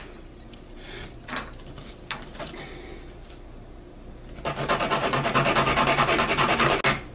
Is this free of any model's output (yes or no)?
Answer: yes